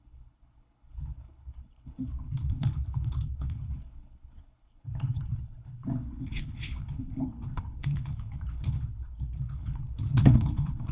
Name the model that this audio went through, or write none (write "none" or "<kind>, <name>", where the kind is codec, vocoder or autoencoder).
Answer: codec, HILCodec